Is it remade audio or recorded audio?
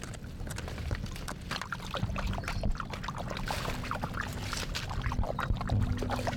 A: recorded